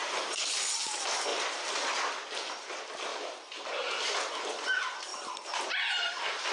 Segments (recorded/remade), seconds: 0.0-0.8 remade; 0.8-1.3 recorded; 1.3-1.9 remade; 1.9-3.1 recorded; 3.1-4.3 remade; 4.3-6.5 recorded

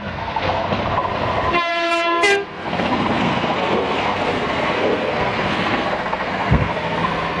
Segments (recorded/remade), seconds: 0.0-0.6 remade; 0.6-1.7 recorded; 1.7-7.4 remade

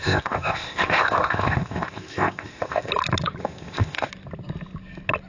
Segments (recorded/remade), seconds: 0.0-2.9 remade; 2.9-3.4 recorded; 3.4-4.1 remade; 4.1-5.3 recorded

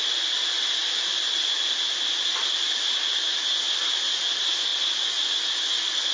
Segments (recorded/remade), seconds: 0.0-6.1 recorded

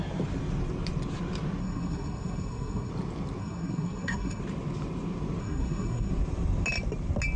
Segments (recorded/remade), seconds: 0.0-1.6 recorded; 1.6-2.9 remade; 2.9-3.4 recorded; 3.4-4.4 remade; 4.4-5.4 recorded; 5.4-6.1 remade; 6.1-7.4 recorded

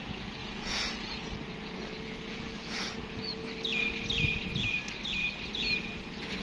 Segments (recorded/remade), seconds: 0.0-3.4 remade; 3.4-6.4 recorded